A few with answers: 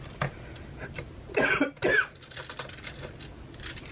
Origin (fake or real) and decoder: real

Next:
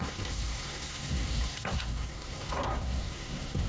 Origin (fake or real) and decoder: fake, codec, SNAC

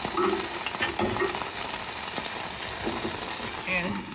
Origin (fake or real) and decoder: real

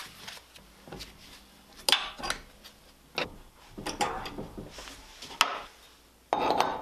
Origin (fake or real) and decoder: real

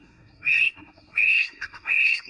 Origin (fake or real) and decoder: fake, codec, SNAC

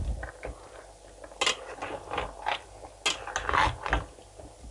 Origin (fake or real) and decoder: real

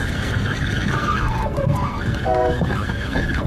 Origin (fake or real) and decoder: fake, codec, SNAC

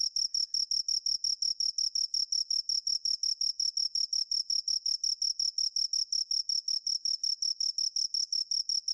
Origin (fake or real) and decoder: real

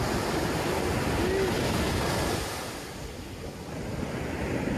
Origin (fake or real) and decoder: real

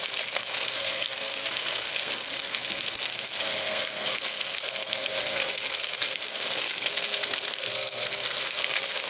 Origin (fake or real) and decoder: fake, codec, SNAC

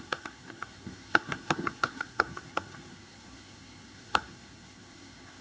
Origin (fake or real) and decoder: fake, codec, SNAC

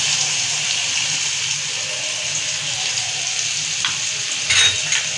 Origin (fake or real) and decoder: real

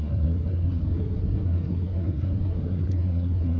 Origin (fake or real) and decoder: fake, codec, SNAC